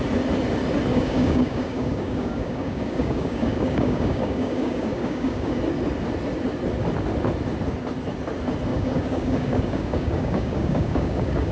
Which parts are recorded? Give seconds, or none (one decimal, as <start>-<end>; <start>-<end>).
0.0-0.9; 5.6-8.7

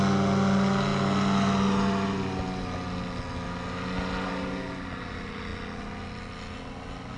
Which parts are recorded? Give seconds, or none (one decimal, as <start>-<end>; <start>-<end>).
0.0-7.2

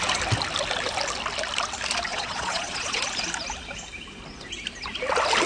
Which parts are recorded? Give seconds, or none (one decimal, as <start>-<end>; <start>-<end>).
0.0-2.1; 3.0-5.5

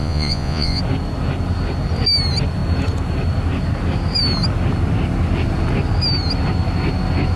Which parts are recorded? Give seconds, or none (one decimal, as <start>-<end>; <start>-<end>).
0.8-7.4